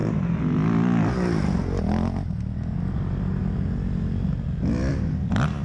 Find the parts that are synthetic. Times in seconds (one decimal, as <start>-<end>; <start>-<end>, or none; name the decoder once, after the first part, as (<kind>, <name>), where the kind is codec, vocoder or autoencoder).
none